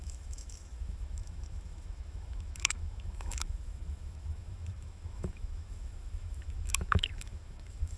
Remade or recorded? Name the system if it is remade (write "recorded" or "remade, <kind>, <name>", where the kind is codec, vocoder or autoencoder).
remade, autoencoder, DAC-VAE